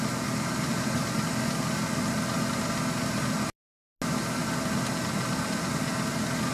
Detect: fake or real real